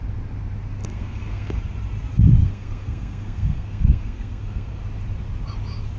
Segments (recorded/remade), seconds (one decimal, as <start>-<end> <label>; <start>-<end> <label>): 0.0-0.8 recorded; 0.8-1.6 remade; 1.6-2.4 recorded; 2.4-4.8 remade; 4.8-6.0 recorded

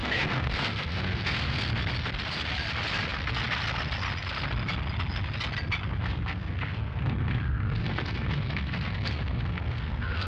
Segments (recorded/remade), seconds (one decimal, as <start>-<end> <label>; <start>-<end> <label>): 0.0-1.7 remade; 1.7-6.0 recorded; 6.0-10.3 remade

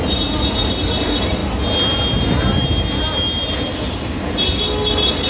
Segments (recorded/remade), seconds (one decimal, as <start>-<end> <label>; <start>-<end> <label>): 0.0-5.3 recorded

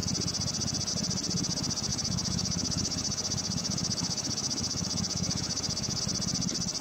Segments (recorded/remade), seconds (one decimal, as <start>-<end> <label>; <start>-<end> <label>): 0.0-1.9 recorded; 1.9-6.0 remade; 6.0-6.8 recorded

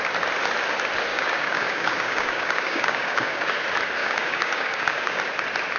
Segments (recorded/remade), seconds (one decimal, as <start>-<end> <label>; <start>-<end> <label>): 0.0-1.1 recorded; 1.1-3.5 remade; 3.5-4.0 recorded; 4.0-5.2 remade; 5.2-5.8 recorded

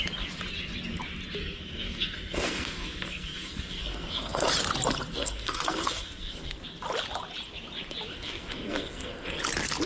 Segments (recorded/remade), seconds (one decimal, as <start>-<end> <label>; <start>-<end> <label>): 0.0-1.4 recorded; 1.4-4.5 remade; 4.5-5.1 recorded; 5.1-6.6 remade; 6.6-8.1 recorded; 8.1-9.4 remade; 9.4-9.9 recorded

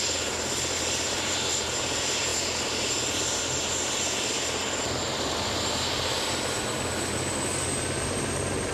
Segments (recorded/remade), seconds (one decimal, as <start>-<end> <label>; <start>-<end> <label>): 0.0-8.7 recorded

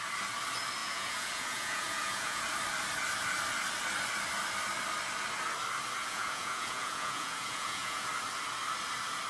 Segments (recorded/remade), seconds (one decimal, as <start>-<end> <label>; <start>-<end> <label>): 0.0-0.8 recorded; 0.8-2.4 remade; 2.4-6.0 recorded; 6.0-8.1 remade; 8.1-9.3 recorded